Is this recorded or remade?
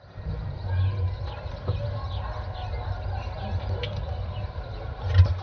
recorded